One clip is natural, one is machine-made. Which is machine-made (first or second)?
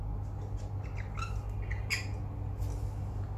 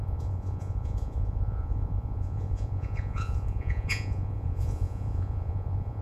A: second